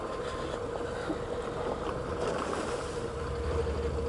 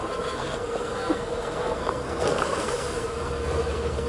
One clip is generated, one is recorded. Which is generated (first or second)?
second